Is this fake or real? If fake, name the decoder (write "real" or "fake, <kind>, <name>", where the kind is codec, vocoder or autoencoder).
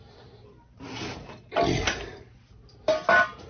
fake, vocoder, BigVGAN v2